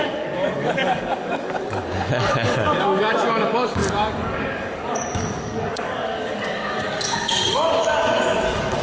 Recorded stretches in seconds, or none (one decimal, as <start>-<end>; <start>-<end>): none